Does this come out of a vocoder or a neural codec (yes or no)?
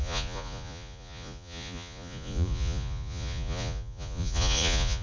yes